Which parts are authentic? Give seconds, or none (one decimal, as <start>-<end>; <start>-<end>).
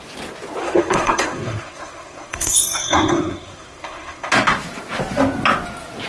0.0-0.6; 4.3-6.1